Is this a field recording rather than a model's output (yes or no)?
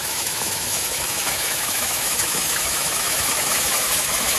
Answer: no